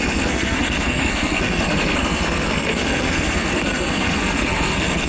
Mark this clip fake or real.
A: fake